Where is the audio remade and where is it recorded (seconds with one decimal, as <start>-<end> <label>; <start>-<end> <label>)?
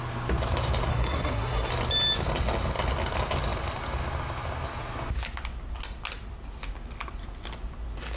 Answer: 0.0-0.9 recorded; 0.9-1.7 remade; 1.7-8.2 recorded